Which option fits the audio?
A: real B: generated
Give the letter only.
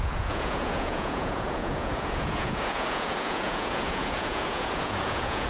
B